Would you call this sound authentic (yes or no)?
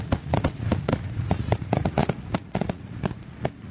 no